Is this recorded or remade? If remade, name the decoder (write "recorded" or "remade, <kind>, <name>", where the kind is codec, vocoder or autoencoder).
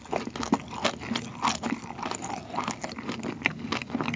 recorded